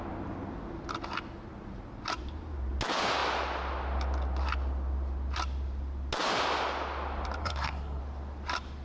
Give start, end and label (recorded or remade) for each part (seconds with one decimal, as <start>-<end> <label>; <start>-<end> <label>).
0.0-7.4 recorded; 7.4-8.0 remade; 8.0-8.8 recorded